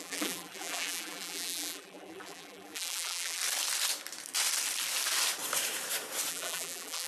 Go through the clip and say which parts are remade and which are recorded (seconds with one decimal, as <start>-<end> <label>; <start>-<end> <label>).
0.0-3.4 remade; 3.4-6.3 recorded; 6.3-7.1 remade